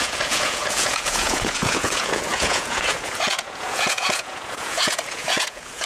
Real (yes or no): no